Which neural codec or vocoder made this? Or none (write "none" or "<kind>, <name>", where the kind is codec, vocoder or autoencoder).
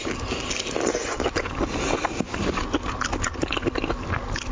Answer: none